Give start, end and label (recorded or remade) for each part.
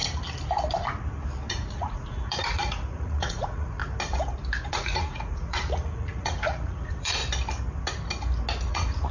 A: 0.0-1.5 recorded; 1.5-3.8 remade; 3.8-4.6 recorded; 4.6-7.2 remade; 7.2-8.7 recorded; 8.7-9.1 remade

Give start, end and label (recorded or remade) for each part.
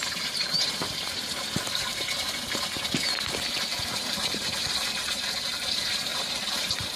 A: 0.0-1.9 remade; 1.9-3.4 recorded; 3.4-7.0 remade